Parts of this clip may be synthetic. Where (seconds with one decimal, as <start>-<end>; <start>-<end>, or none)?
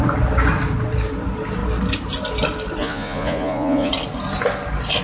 2.8-3.9